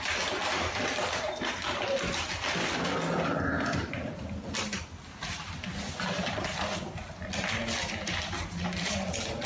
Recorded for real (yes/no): yes